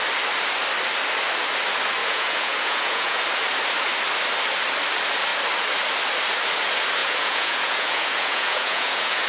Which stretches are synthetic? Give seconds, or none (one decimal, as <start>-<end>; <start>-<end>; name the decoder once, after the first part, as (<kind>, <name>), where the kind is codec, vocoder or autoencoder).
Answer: 2.0-3.2 (vocoder, Vocos); 7.0-9.3